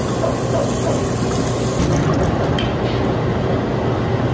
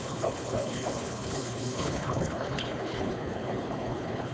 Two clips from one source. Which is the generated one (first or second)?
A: second